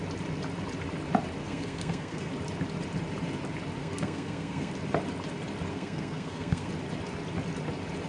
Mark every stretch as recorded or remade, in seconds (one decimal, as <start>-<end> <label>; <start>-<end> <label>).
0.0-1.4 recorded; 1.4-2.3 remade; 2.3-3.8 recorded; 3.8-4.7 remade; 4.7-5.7 recorded; 5.7-6.7 remade; 6.7-8.1 recorded